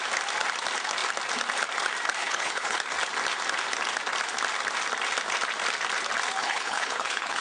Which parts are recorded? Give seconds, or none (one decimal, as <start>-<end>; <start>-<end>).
0.0-2.2; 2.8-6.4